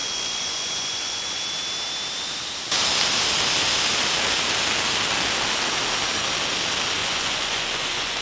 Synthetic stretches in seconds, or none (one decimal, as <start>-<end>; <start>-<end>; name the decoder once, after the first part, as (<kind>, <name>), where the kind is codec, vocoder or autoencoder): 0.0-1.4 (vocoder, Vocos); 7.0-8.2